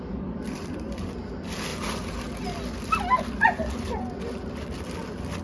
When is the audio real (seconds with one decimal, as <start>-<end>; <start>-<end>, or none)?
0.0-5.4